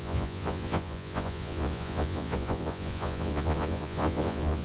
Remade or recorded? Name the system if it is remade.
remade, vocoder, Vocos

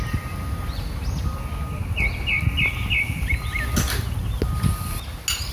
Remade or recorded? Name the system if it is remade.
recorded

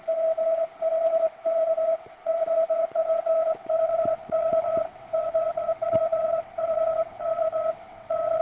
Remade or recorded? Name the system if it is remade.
remade, vocoder, WaveNeXt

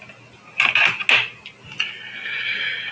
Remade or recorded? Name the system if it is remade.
recorded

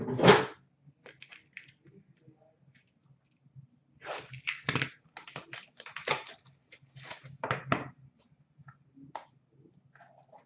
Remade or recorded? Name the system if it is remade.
recorded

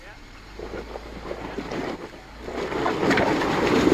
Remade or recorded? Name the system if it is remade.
recorded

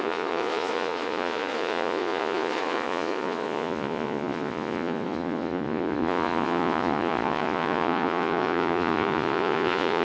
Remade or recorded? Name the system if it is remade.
remade, vocoder, Vocos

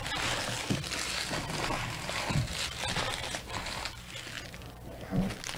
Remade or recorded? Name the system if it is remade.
recorded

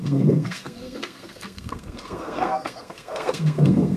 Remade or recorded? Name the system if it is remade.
remade, codec, SNAC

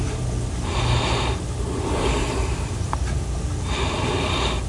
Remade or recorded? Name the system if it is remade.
recorded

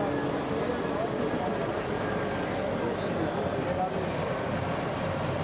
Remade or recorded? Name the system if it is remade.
recorded